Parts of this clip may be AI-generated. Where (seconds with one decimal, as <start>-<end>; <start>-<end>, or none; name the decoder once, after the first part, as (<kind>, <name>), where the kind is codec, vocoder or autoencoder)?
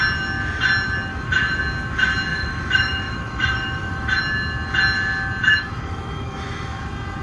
1.1-1.6 (autoencoder, DAC-VAE); 2.3-4.2; 5.4-6.8